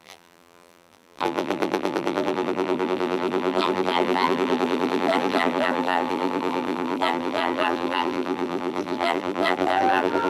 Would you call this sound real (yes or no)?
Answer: no